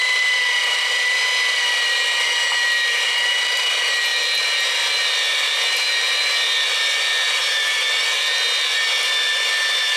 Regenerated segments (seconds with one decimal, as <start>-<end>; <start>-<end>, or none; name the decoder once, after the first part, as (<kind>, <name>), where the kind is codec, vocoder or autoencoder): none